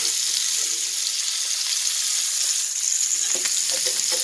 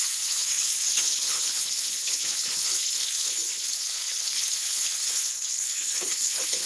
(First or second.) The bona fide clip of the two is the first